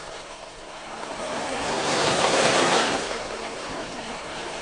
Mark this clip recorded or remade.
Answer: remade